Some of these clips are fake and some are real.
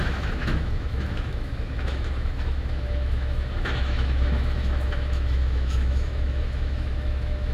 fake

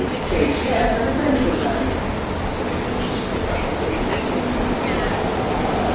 real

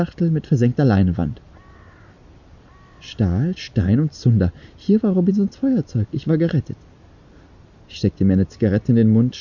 real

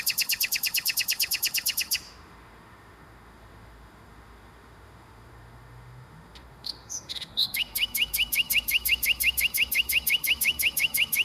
fake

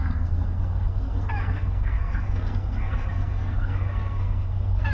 fake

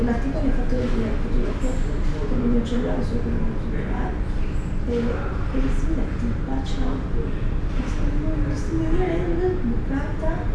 real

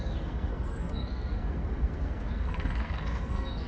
fake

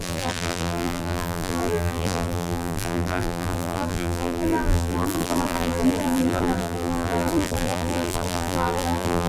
fake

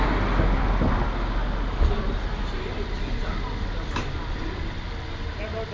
real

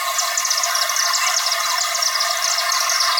real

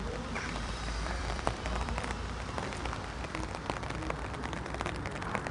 fake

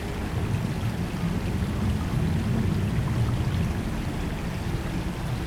real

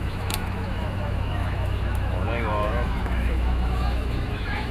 fake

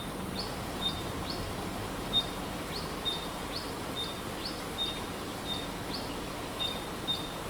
real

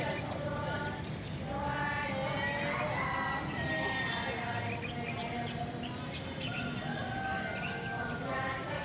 real